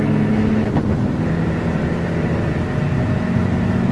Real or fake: real